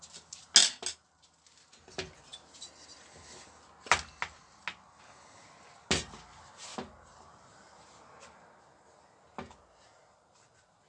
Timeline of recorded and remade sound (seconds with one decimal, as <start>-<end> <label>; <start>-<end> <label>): 0.0-10.9 recorded